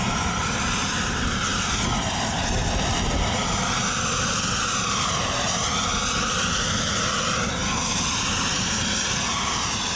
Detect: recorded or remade recorded